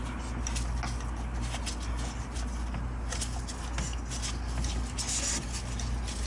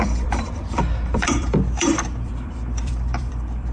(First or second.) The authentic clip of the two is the first